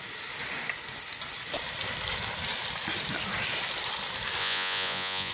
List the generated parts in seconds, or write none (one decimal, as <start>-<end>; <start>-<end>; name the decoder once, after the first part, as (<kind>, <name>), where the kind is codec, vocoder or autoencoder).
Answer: 4.4-5.3 (vocoder, Vocos)